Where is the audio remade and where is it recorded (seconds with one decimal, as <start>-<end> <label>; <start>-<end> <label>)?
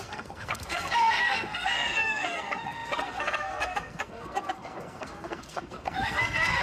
0.0-6.6 remade